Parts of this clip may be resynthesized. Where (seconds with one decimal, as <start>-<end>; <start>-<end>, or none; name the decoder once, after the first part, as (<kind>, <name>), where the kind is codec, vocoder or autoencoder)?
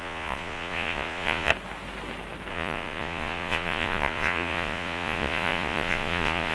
0.0-1.5 (vocoder, Vocos); 2.5-6.5